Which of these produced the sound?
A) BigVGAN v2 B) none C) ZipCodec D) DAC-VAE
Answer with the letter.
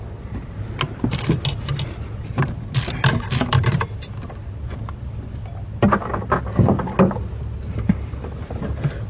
B